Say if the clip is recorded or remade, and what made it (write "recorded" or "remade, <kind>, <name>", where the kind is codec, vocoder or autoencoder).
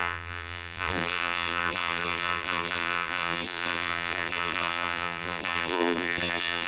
remade, vocoder, BigVGAN v2